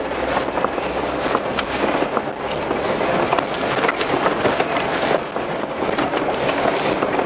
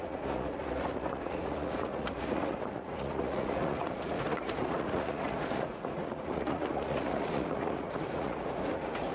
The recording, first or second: first